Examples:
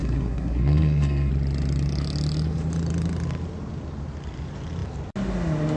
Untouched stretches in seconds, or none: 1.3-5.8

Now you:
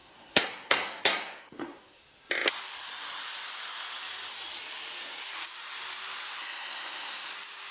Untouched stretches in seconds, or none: 2.0-6.4; 7.3-7.7

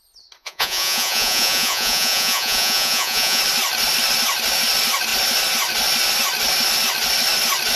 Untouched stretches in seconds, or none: 0.0-0.4; 3.4-7.8

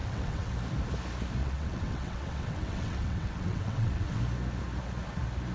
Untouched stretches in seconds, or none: 0.5-1.4; 4.2-5.5